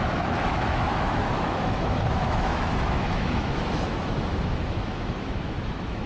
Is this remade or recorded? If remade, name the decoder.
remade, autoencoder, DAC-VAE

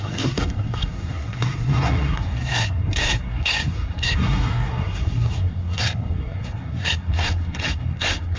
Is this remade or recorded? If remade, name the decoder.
remade, codec, SNAC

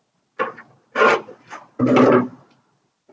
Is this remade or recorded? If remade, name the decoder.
recorded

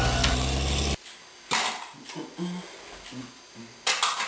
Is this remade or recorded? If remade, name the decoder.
recorded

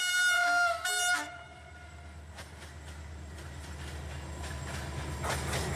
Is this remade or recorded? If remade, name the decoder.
recorded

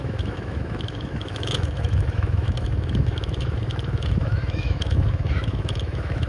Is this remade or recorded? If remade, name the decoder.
remade, autoencoder, DAC-VAE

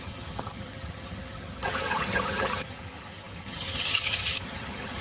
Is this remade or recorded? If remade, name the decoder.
remade, vocoder, HiFi-GAN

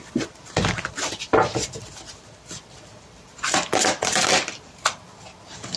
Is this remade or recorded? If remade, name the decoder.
remade, vocoder, BigVGAN v2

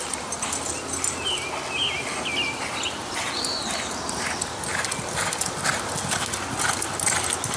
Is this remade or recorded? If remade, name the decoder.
recorded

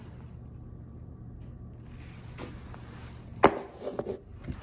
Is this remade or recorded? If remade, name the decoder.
recorded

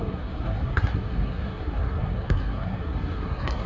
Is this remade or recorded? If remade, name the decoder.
remade, codec, SNAC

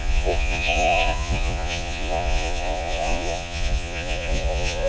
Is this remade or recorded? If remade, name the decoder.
remade, vocoder, Vocos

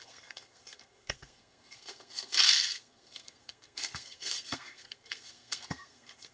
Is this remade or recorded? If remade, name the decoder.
remade, codec, SNAC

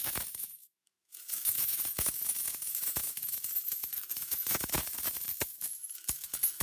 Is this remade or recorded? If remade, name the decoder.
remade, autoencoder, DAC-VAE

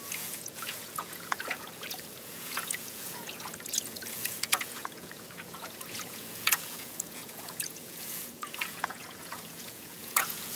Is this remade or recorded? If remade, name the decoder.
remade, vocoder, Vocos